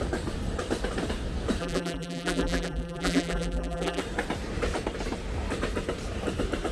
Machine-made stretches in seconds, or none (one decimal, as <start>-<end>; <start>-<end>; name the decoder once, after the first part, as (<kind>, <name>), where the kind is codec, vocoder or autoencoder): 1.6-4.0 (vocoder, BigVGAN v2)